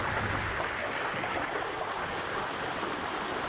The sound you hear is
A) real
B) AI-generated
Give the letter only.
A